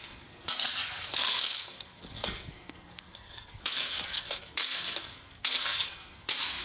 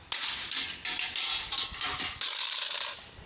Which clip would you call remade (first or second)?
first